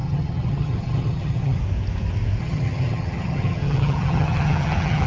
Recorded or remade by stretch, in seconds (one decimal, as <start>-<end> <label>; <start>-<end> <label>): 0.0-1.6 remade; 1.6-2.4 recorded; 2.4-5.1 remade

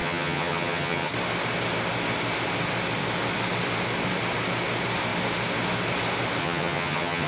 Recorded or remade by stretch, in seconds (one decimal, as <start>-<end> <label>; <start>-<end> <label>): 0.0-1.1 remade; 1.1-6.4 recorded; 6.4-7.3 remade

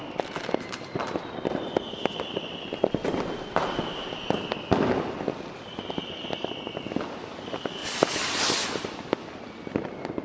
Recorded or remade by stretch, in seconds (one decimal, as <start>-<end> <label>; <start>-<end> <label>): 0.0-10.2 recorded

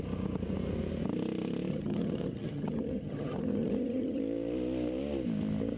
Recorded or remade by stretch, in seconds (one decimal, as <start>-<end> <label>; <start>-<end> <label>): 0.0-1.7 recorded; 1.7-4.2 remade; 4.2-5.8 recorded

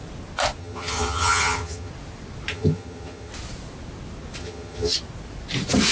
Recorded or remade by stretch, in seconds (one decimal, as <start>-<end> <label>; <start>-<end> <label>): 0.0-0.6 recorded; 0.6-1.9 remade; 1.9-2.5 recorded; 2.5-3.3 remade; 3.3-4.4 recorded; 4.4-4.9 remade; 4.9-5.9 recorded

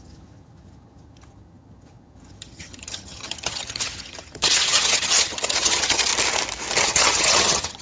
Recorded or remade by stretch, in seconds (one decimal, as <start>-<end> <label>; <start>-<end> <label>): 0.0-6.1 remade; 6.1-6.8 recorded; 6.8-7.8 remade

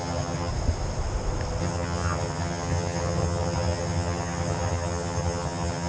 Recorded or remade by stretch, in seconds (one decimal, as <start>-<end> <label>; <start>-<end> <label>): 0.0-0.5 remade; 0.5-1.6 recorded; 1.6-5.9 remade

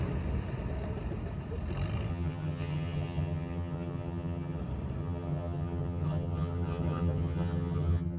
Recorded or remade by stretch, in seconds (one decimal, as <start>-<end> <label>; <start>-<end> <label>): 0.0-2.1 recorded; 2.1-4.6 remade; 4.6-5.0 recorded; 5.0-8.2 remade